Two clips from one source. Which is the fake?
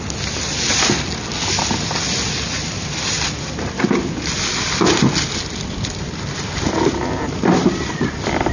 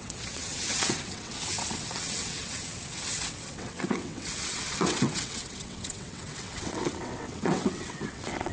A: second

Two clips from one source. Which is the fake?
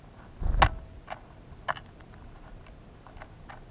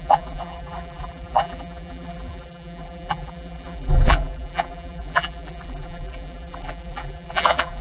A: second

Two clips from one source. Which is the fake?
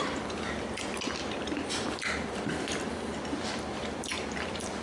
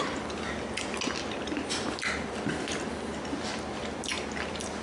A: first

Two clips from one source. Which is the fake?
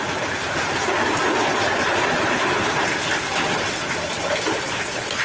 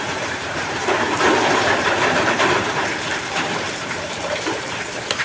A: second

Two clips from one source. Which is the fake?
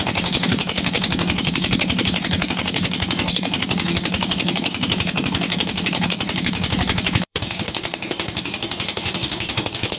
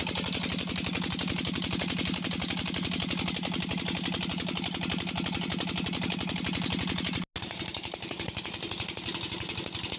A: first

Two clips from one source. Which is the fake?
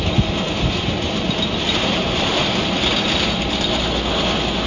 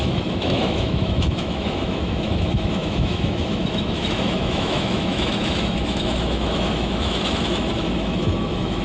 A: second